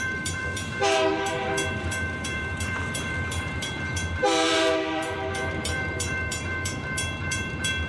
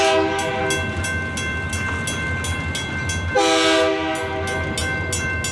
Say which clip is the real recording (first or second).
second